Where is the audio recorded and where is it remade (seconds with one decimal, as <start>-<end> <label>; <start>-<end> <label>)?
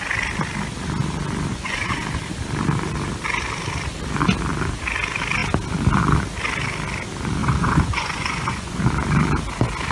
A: 0.0-1.5 recorded; 1.5-2.0 remade; 2.0-7.4 recorded; 7.4-8.8 remade; 8.8-9.9 recorded